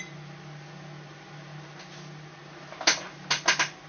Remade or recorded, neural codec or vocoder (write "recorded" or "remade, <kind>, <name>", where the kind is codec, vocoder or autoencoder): recorded